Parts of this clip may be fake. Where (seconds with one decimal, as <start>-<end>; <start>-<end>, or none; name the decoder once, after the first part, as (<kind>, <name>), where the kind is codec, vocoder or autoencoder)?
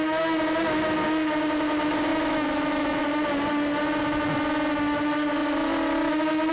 2.1-3.0 (autoencoder, DAC-VAE)